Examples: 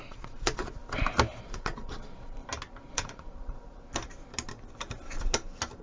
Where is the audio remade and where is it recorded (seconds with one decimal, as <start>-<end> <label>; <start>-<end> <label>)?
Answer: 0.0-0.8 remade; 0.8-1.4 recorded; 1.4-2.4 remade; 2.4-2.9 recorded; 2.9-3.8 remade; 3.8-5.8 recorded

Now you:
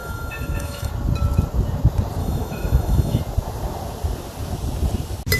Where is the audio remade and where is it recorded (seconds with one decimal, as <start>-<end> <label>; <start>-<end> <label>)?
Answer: 0.0-0.9 remade; 0.9-2.2 recorded; 2.2-3.2 remade; 3.2-5.4 recorded

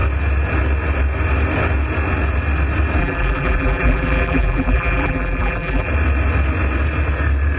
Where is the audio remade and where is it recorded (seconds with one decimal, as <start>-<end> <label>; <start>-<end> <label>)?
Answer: 0.0-3.0 recorded; 3.0-5.9 remade; 5.9-7.6 recorded